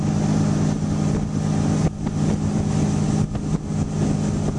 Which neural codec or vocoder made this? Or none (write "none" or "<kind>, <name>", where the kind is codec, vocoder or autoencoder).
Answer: none